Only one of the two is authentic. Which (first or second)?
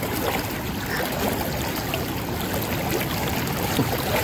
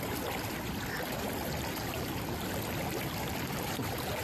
first